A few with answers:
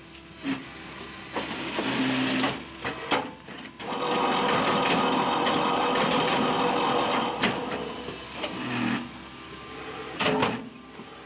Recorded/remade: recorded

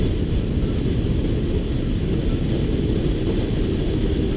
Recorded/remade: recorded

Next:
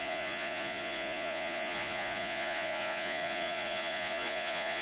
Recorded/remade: remade